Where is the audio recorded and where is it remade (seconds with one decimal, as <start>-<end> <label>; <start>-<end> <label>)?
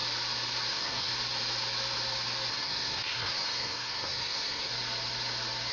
0.0-0.7 recorded; 0.7-1.1 remade; 1.1-2.5 recorded; 2.5-4.7 remade; 4.7-5.7 recorded